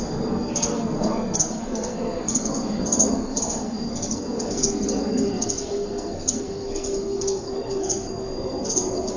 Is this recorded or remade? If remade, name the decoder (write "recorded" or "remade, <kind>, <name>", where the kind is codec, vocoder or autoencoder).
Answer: remade, codec, SNAC